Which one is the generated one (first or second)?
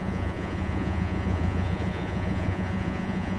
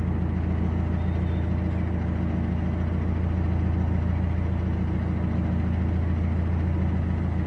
first